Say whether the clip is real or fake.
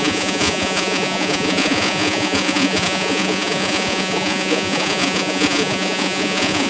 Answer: fake